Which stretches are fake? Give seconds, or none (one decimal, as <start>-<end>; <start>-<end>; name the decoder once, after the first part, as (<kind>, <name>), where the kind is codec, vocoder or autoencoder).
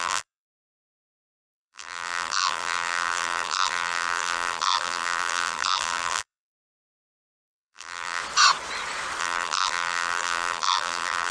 0.0-8.2 (vocoder, BigVGAN v2); 9.2-11.3